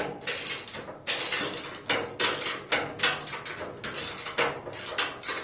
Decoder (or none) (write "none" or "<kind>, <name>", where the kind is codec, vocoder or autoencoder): none